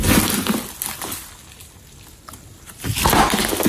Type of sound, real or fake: real